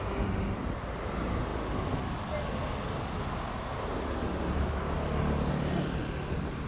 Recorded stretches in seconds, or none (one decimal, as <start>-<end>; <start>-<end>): 0.0-6.7